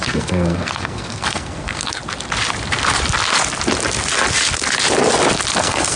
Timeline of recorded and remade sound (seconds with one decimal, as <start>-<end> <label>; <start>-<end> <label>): 0.0-2.0 remade; 2.0-5.6 recorded; 5.6-6.0 remade